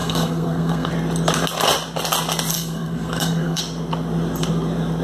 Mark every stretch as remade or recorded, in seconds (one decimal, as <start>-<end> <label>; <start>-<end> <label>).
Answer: 0.0-0.9 remade; 0.9-2.5 recorded; 2.5-3.6 remade; 3.6-5.0 recorded